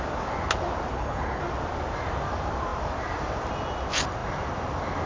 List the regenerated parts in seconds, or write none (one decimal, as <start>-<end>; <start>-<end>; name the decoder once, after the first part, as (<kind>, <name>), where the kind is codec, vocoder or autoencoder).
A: 0.9-1.4 (codec, HILCodec)